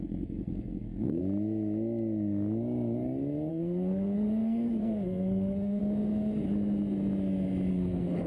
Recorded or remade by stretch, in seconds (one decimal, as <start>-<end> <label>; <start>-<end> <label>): 0.0-1.2 remade; 1.2-3.5 recorded; 3.5-5.8 remade; 5.8-7.7 recorded; 7.7-8.3 remade